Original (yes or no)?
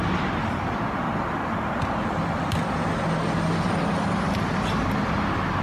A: yes